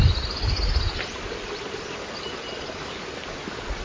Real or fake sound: real